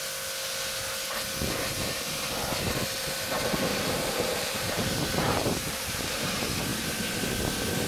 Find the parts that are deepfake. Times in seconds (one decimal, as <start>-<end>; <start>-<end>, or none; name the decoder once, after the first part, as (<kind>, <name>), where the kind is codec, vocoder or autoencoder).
3.7-6.3 (vocoder, BigVGAN v2)